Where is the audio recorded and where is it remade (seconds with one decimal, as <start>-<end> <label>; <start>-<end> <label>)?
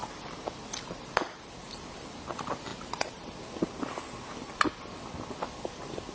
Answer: 0.0-6.1 recorded